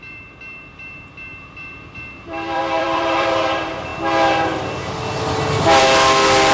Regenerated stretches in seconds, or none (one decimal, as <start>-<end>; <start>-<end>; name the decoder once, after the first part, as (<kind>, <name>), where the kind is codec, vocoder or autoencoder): 0.0-3.9 (vocoder, BigVGAN v2); 5.8-6.5